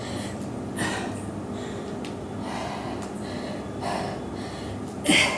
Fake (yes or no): no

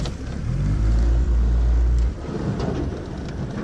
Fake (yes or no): yes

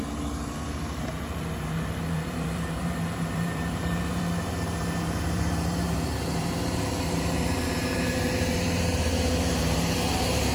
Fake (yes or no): yes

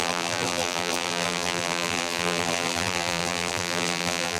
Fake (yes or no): yes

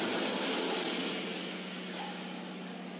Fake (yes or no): no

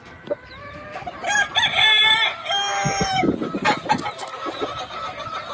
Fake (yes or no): no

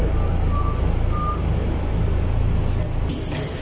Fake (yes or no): no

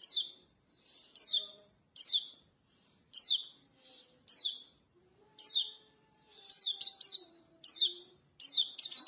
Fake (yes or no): yes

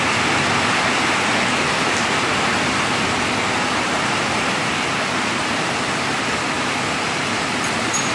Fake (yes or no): no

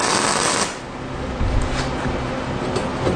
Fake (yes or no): no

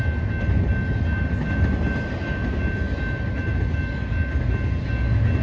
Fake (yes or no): no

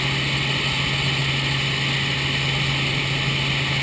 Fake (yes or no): no